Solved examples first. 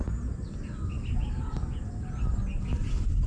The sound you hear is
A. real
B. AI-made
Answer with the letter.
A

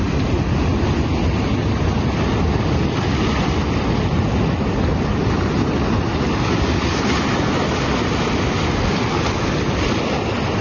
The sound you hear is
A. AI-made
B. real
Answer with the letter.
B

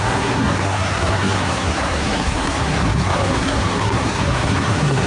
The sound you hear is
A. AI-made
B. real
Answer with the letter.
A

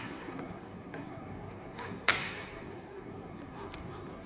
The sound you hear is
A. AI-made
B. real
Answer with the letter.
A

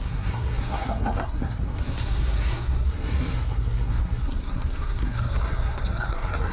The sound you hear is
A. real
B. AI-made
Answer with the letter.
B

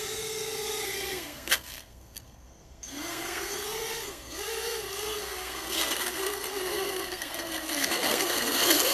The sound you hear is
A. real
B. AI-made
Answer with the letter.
B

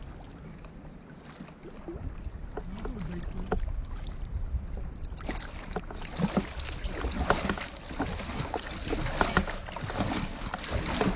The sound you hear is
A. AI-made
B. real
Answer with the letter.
B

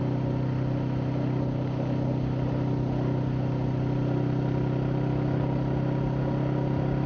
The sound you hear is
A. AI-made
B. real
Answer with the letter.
B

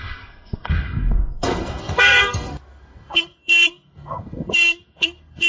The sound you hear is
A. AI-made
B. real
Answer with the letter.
A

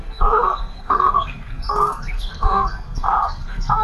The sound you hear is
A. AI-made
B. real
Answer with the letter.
A